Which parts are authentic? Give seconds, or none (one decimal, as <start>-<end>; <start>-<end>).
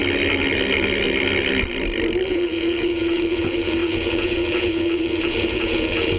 0.0-2.3